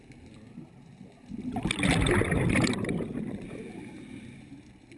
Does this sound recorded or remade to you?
recorded